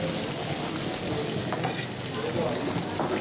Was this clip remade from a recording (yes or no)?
no